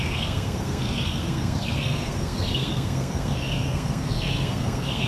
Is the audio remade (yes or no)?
yes